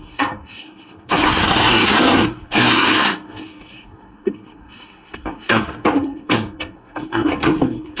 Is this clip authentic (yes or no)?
no